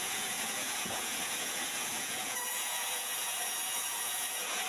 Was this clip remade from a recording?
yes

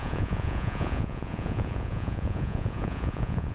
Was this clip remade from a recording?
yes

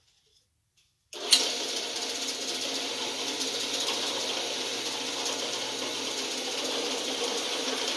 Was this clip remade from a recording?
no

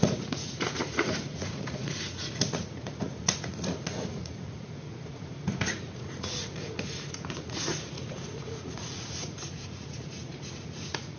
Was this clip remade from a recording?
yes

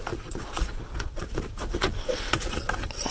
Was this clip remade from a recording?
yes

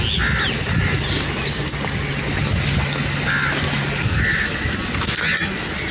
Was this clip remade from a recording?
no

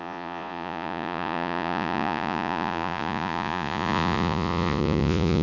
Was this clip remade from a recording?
yes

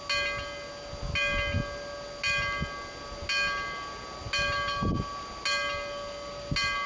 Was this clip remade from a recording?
no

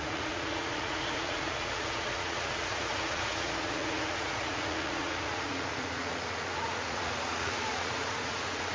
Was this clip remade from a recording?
yes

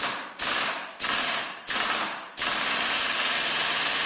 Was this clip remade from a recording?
no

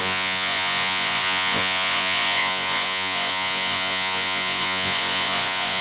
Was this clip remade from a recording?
yes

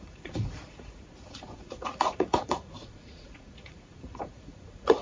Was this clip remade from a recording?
yes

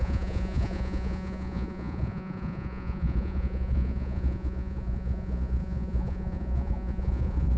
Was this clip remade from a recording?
yes